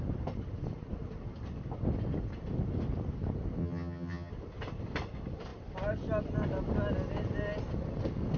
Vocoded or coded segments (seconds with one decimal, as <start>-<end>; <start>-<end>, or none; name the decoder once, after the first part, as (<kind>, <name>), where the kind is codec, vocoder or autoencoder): 3.6-4.3 (vocoder, HiFi-GAN)